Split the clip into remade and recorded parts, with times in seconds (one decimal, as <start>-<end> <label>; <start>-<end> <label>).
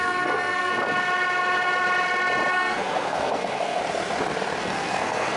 0.0-0.7 remade; 0.7-2.5 recorded; 2.5-3.8 remade; 3.8-4.6 recorded; 4.6-5.4 remade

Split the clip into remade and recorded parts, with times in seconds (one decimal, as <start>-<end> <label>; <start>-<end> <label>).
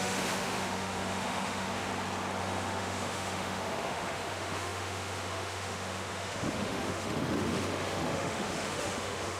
0.0-1.9 remade; 1.9-2.4 recorded; 2.4-9.4 remade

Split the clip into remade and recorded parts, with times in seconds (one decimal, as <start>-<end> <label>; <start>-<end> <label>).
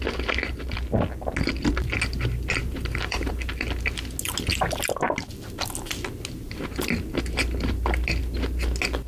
0.0-2.6 recorded; 2.6-3.3 remade; 3.3-9.1 recorded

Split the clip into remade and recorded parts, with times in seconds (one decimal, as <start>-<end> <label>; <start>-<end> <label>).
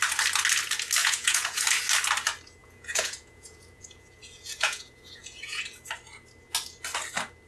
0.0-1.0 recorded; 1.0-1.6 remade; 1.6-2.6 recorded; 2.6-5.6 remade; 5.6-7.5 recorded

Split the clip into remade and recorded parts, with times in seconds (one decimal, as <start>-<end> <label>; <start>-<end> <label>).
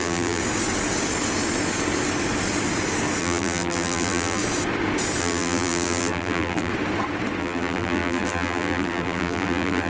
0.0-0.4 remade; 0.4-3.2 recorded; 3.2-4.4 remade; 4.4-5.2 recorded; 5.2-6.7 remade; 6.7-7.4 recorded; 7.4-9.9 remade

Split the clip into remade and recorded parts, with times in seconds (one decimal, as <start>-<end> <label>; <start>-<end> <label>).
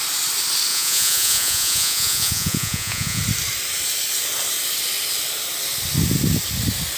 0.0-0.7 recorded; 0.7-3.2 remade; 3.2-7.0 recorded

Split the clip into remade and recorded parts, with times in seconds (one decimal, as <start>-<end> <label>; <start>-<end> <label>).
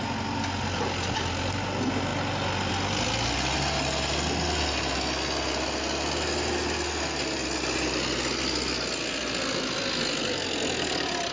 0.0-11.3 recorded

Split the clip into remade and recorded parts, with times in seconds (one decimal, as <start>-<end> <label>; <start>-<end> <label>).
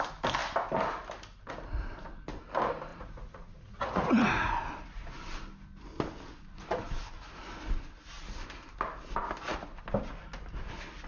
0.0-2.9 recorded; 2.9-4.5 remade; 4.5-11.1 recorded